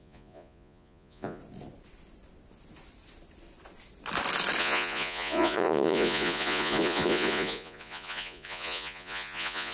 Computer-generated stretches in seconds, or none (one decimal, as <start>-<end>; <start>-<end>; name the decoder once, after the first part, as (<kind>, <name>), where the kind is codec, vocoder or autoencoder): 0.0-1.4 (vocoder, Vocos); 4.6-9.7